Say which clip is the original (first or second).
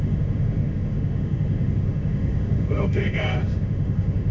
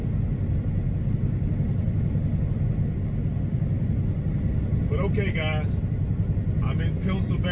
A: second